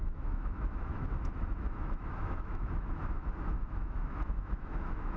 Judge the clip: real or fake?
fake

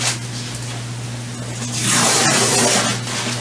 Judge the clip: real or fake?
real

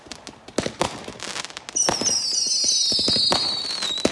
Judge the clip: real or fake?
real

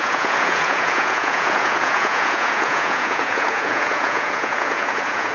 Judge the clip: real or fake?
fake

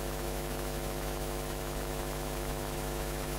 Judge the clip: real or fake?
fake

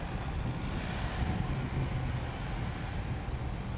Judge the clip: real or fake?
real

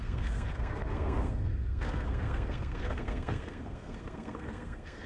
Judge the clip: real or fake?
fake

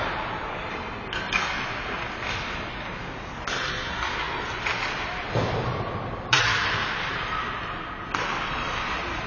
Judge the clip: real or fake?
real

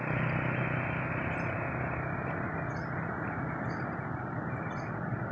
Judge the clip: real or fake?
real